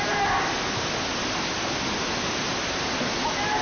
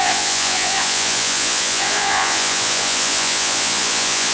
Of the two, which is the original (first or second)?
first